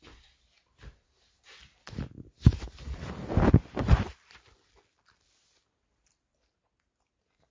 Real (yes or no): yes